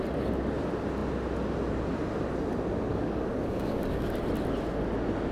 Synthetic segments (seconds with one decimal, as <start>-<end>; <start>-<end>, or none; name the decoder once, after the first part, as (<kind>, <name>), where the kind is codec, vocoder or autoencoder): 2.9-4.2 (codec, DAC)